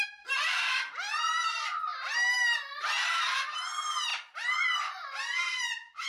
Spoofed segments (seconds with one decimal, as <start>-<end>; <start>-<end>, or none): 1.9-3.2